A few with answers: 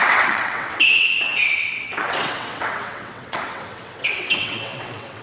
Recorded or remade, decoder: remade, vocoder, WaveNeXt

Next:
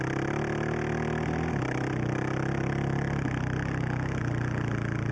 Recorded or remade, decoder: recorded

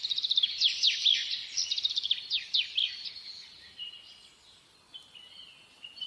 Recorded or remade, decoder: recorded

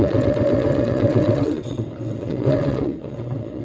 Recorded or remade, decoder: remade, vocoder, WaveNeXt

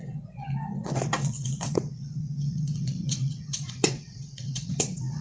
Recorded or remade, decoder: remade, vocoder, WaveNeXt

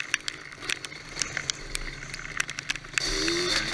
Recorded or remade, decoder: recorded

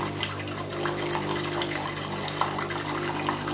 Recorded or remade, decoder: recorded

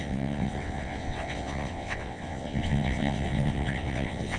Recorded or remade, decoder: remade, vocoder, WaveNeXt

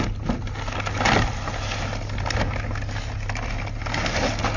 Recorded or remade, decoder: recorded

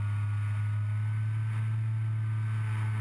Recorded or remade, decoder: recorded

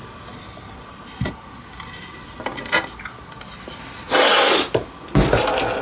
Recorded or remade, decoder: recorded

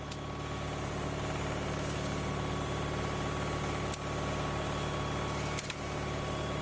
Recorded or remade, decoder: recorded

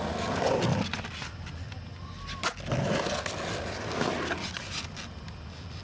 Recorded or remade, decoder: recorded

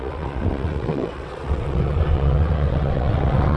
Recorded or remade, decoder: remade, vocoder, WaveNeXt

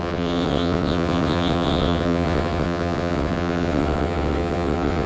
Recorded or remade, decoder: remade, vocoder, WaveNeXt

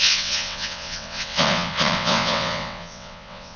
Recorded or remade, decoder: remade, vocoder, WaveNeXt